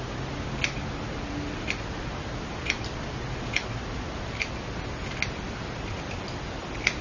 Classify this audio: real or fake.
real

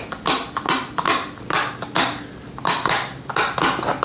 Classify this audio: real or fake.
real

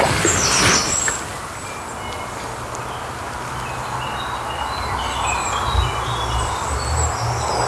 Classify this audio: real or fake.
real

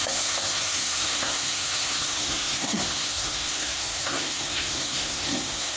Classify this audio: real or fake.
fake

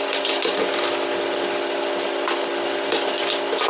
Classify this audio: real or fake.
real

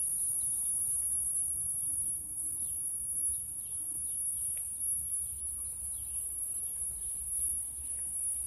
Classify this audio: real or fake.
real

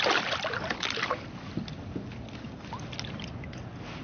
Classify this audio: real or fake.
real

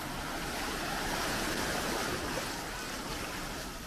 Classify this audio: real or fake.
real